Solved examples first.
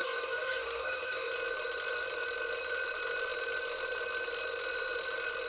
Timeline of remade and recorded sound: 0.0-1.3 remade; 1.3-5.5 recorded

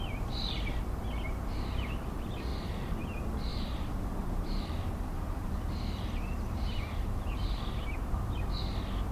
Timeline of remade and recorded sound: 0.0-2.5 recorded; 2.5-3.0 remade; 3.0-3.5 recorded; 3.5-8.5 remade; 8.5-9.1 recorded

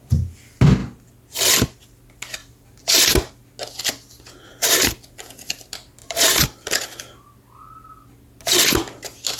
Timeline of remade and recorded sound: 0.0-2.4 recorded; 2.4-3.3 remade; 3.3-6.0 recorded; 6.0-6.8 remade; 6.8-9.4 recorded

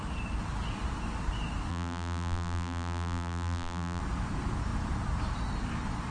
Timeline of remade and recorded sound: 0.0-1.7 recorded; 1.7-4.0 remade; 4.0-6.1 recorded

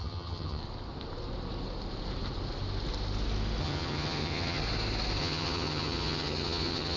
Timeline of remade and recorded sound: 0.0-0.6 remade; 0.6-3.6 recorded; 3.6-4.6 remade; 4.6-5.2 recorded; 5.2-7.0 remade

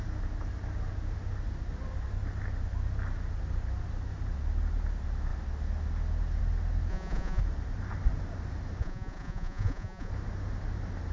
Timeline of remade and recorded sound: 0.0-6.9 recorded; 6.9-7.4 remade; 7.4-8.8 recorded; 8.8-10.1 remade; 10.1-11.1 recorded